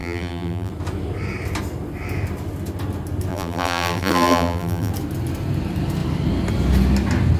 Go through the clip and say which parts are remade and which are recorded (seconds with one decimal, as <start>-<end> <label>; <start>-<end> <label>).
0.0-0.7 remade; 0.7-3.3 recorded; 3.3-4.9 remade; 4.9-7.4 recorded

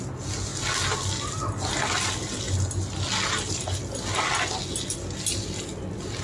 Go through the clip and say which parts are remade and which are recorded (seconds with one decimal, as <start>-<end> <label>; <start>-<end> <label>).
0.0-6.2 recorded

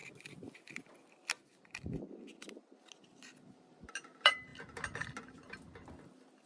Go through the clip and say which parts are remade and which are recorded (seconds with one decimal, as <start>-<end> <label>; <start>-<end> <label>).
0.0-6.5 recorded

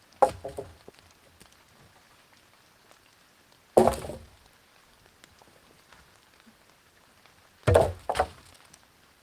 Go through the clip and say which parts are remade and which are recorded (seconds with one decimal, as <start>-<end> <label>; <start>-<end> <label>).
0.0-9.2 recorded

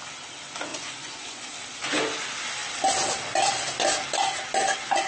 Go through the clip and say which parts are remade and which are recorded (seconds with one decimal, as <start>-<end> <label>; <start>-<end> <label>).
0.0-0.7 recorded; 0.7-1.5 remade; 1.5-5.1 recorded

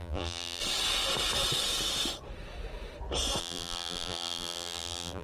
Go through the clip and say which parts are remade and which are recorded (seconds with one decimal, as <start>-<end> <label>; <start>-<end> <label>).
0.0-0.6 remade; 0.6-3.4 recorded; 3.4-5.2 remade

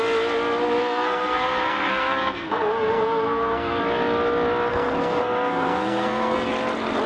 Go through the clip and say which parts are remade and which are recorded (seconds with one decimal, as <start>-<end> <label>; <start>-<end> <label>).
0.0-0.8 recorded; 0.8-3.8 remade; 3.8-4.7 recorded; 4.7-6.5 remade; 6.5-7.1 recorded